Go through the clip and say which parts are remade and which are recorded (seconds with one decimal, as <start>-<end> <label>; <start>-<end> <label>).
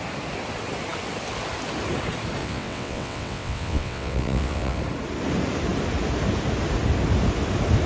0.0-2.4 recorded; 2.4-4.8 remade; 4.8-7.9 recorded